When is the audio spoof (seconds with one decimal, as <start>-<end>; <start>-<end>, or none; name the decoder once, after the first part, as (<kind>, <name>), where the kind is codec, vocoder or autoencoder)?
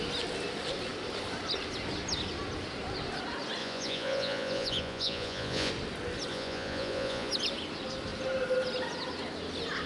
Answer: 3.6-5.7 (vocoder, Vocos); 6.3-7.3